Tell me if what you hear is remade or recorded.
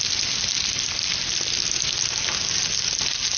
recorded